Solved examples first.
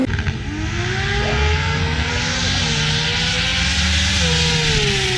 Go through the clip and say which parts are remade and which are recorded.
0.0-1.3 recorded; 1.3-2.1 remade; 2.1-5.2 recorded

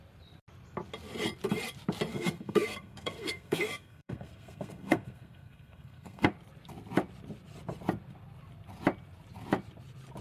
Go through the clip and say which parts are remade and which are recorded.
0.0-2.1 recorded; 2.1-6.3 remade; 6.3-10.2 recorded

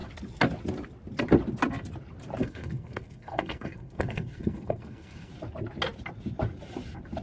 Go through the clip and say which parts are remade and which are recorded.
0.0-2.4 recorded; 2.4-5.3 remade; 5.3-7.2 recorded

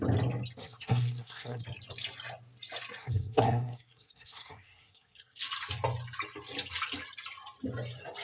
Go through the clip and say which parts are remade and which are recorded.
0.0-0.6 recorded; 0.6-1.6 remade; 1.6-3.0 recorded; 3.0-5.4 remade; 5.4-8.2 recorded

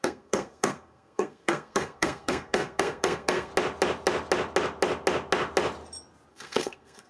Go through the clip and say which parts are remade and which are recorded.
0.0-3.5 remade; 3.5-6.3 recorded; 6.3-7.1 remade

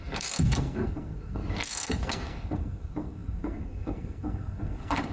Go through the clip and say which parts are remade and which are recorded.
0.0-5.1 remade

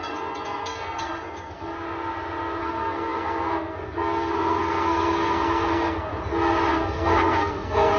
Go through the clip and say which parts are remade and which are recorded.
0.0-1.7 remade; 1.7-2.6 recorded; 2.6-6.1 remade; 6.1-6.7 recorded; 6.7-8.0 remade